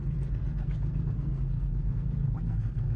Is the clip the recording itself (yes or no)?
no